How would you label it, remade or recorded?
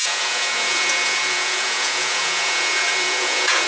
remade